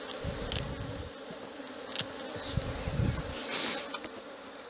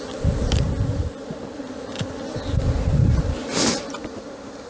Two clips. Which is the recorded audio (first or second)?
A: first